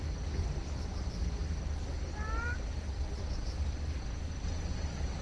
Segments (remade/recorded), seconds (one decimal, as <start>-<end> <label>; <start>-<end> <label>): 0.0-5.2 recorded